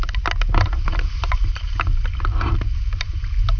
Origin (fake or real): real